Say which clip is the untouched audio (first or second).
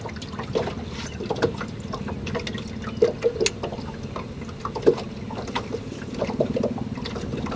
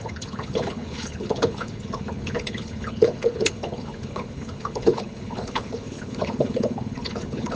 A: first